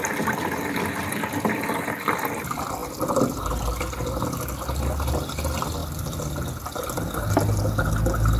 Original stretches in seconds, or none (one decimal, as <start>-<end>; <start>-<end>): 0.0-8.4